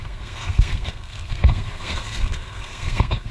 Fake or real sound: fake